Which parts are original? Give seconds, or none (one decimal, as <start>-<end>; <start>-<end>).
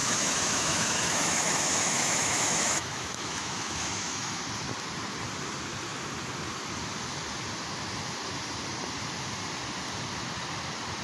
4.4-11.0